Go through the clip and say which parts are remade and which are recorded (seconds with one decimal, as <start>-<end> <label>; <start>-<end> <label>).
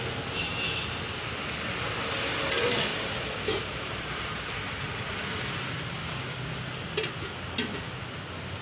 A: 0.0-8.6 recorded